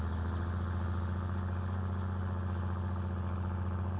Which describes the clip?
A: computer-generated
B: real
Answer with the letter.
B